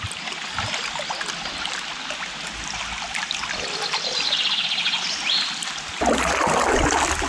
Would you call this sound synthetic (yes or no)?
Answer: no